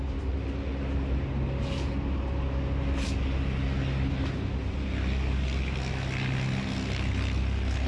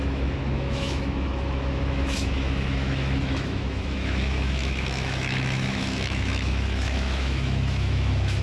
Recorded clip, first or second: first